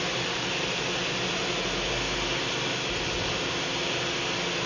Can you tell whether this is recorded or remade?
recorded